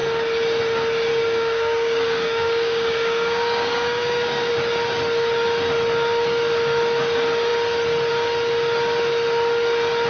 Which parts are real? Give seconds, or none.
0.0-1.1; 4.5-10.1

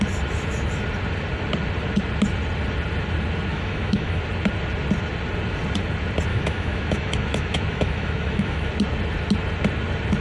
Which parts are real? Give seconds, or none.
0.0-3.5; 4.2-6.3; 8.7-10.2

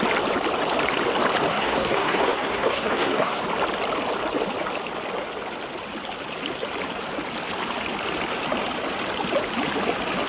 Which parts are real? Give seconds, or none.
0.0-1.5; 3.4-10.3

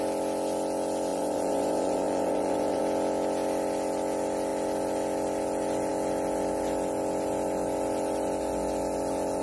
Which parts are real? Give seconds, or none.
0.0-1.1; 2.8-9.4

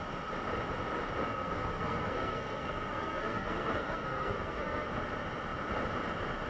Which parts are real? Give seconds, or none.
0.0-1.2; 4.9-6.5

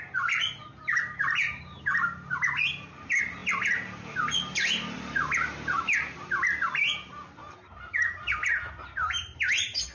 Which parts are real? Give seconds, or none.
0.0-9.9